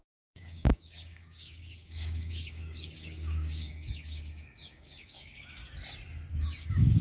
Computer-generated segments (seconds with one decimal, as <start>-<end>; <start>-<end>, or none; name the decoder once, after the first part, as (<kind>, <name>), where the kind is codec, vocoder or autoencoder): 0.0-5.6 (codec, DAC); 6.3-7.0